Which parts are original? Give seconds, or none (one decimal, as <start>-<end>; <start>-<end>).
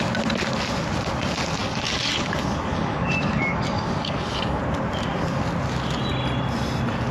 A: 0.0-1.6; 4.6-7.1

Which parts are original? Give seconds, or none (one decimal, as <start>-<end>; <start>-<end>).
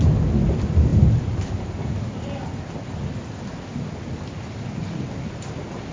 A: 0.0-5.9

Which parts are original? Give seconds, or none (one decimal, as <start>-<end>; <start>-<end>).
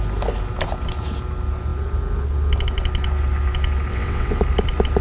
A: 0.0-3.9; 4.4-5.0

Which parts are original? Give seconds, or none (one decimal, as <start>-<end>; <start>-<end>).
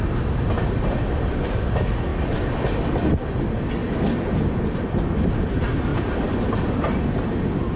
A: 0.0-3.8; 4.3-5.9; 7.3-7.8